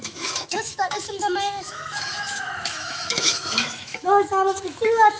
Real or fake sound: fake